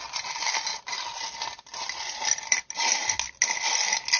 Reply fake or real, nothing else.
real